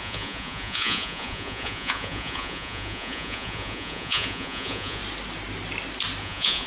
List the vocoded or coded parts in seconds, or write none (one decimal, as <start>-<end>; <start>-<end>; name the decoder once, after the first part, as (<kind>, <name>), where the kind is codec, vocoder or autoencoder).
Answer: 0.0-5.0 (vocoder, Vocos); 6.2-6.7